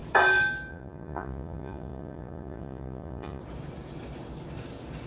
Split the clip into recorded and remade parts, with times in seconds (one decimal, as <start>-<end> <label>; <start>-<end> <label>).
0.0-0.7 recorded; 0.7-3.4 remade; 3.4-5.1 recorded